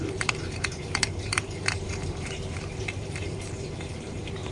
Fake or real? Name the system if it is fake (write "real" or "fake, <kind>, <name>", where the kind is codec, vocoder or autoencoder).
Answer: fake, vocoder, BigVGAN v2